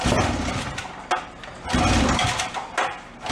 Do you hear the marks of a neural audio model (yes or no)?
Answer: no